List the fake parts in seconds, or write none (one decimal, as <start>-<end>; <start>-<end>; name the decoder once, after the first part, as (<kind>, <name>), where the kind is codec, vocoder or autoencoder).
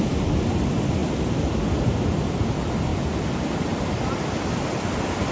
none